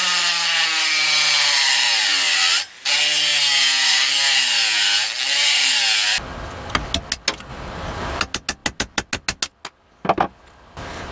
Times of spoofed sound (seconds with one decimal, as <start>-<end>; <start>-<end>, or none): 7.5-8.2